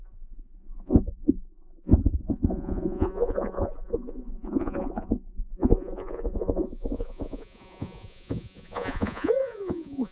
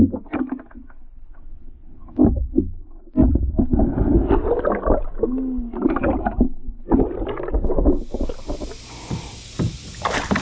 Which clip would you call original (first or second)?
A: second